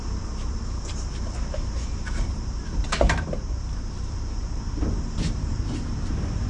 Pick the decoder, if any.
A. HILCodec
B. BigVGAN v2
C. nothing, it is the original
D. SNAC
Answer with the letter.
B